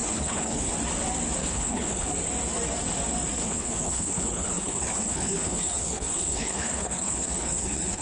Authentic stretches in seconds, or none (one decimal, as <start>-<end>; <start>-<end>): 0.7-1.4; 2.1-3.4